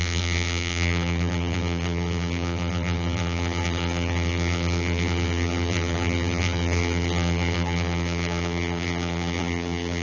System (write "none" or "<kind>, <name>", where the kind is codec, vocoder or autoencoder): vocoder, BigVGAN v2